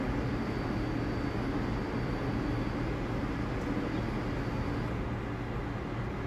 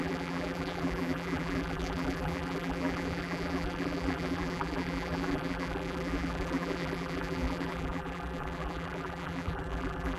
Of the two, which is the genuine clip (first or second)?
first